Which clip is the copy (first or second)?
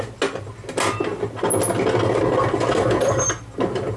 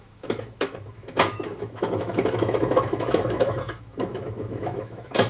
second